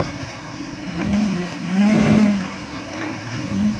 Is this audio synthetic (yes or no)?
yes